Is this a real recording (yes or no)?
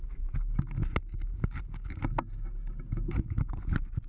yes